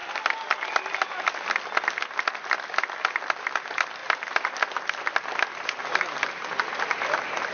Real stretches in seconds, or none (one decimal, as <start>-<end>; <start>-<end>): 0.0-7.5